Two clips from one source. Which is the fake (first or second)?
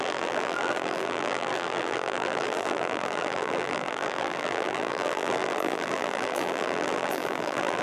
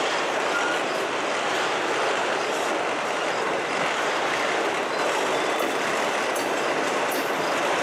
first